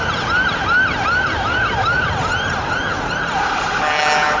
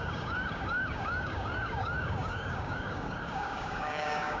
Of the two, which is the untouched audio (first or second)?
first